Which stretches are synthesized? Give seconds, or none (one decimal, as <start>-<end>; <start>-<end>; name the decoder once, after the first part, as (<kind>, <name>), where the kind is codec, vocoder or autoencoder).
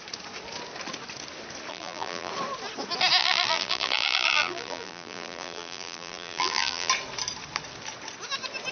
1.7-2.3 (vocoder, BigVGAN v2); 3.2-6.9